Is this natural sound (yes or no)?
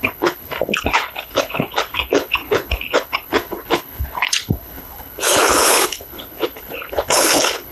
no